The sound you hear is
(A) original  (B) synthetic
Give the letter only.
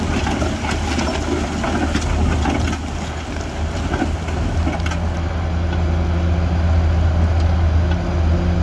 A